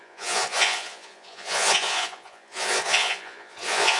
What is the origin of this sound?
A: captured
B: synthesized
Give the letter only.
B